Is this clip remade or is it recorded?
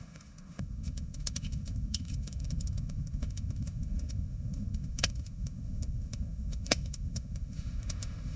remade